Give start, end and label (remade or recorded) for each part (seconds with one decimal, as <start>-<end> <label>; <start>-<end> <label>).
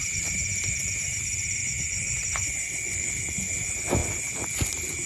0.0-1.6 recorded; 1.6-3.1 remade; 3.1-5.1 recorded